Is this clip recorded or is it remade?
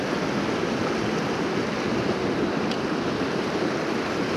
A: recorded